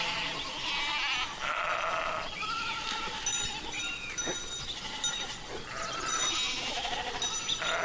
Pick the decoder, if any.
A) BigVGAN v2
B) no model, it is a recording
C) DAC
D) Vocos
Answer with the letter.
B